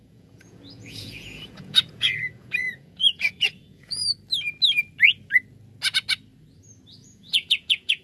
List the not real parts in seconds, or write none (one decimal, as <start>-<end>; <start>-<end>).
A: 0.0-4.0; 7.0-8.0